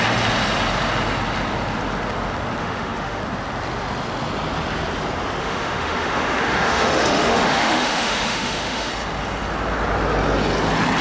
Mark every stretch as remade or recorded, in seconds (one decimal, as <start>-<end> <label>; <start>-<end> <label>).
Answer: 0.0-2.6 recorded; 2.6-3.2 remade; 3.2-5.4 recorded; 5.4-8.9 remade; 8.9-11.0 recorded